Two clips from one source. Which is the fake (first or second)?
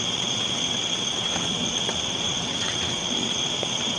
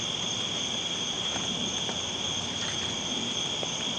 first